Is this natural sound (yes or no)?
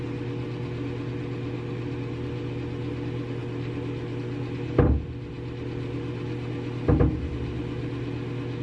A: yes